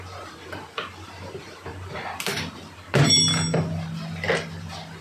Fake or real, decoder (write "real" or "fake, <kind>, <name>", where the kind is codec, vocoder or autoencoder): real